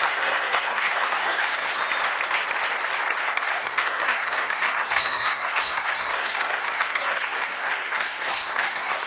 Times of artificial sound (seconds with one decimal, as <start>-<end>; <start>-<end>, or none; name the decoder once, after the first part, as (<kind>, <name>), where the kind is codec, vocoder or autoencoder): 0.0-1.8 (codec, SNAC); 3.2-9.1